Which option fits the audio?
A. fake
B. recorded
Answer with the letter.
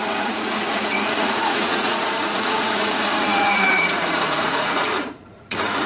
A